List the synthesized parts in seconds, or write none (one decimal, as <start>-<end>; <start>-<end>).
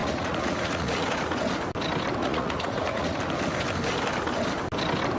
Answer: 0.0-1.5; 2.2-3.2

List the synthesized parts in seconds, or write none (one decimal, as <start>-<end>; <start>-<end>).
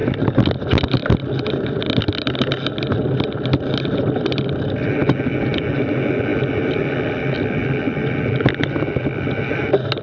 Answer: none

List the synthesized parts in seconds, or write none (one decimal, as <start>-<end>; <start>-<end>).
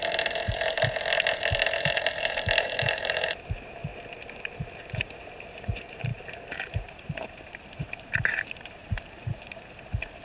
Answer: 0.0-3.9; 4.8-10.2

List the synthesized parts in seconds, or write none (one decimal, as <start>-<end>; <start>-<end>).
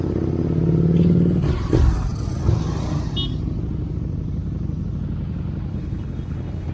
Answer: 5.7-6.7